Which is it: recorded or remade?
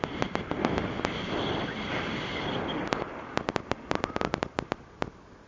recorded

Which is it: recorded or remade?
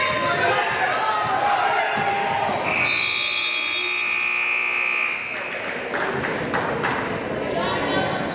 recorded